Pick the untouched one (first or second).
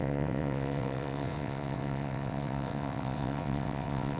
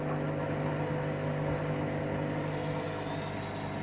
second